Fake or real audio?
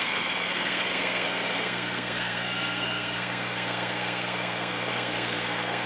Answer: fake